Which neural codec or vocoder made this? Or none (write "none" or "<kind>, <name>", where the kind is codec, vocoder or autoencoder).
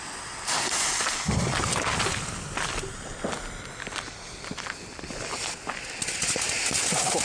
none